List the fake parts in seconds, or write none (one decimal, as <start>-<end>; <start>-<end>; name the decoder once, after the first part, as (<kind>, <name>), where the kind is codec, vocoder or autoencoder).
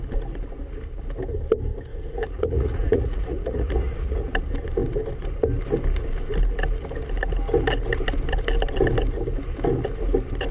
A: 1.9-4.3 (vocoder, Vocos)